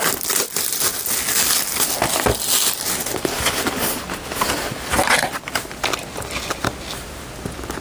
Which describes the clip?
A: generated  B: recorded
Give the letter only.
B